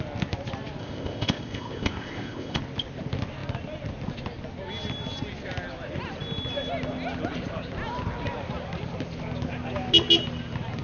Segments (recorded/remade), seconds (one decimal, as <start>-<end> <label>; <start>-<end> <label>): 0.0-0.8 recorded; 0.8-2.6 remade; 2.6-10.8 recorded